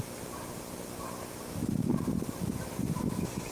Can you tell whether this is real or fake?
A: real